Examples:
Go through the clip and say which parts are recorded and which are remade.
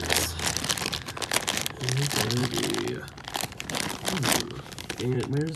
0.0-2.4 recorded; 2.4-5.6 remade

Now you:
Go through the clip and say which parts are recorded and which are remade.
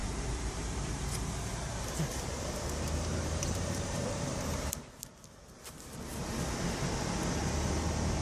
0.0-1.3 remade; 1.3-2.1 recorded; 2.1-5.1 remade; 5.1-8.2 recorded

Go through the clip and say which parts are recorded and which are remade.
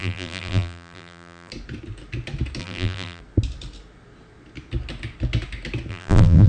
0.0-1.5 remade; 1.5-2.6 recorded; 2.6-3.2 remade; 3.2-5.9 recorded; 5.9-6.5 remade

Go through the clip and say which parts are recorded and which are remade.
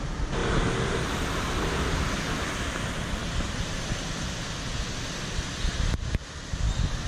0.0-0.4 recorded; 0.4-2.5 remade; 2.5-3.2 recorded; 3.2-3.8 remade; 3.8-7.1 recorded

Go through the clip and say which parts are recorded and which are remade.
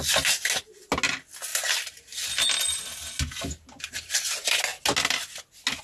0.0-5.8 recorded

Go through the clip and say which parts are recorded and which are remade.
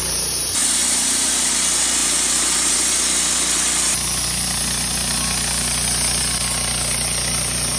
0.0-0.6 recorded; 0.6-1.3 remade; 1.3-7.8 recorded